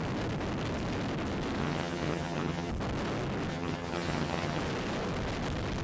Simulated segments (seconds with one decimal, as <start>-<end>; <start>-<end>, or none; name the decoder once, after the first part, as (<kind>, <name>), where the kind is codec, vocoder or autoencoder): 1.6-2.7 (vocoder, HiFi-GAN); 3.5-4.6